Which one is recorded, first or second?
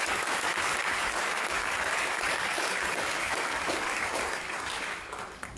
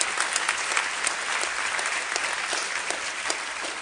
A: second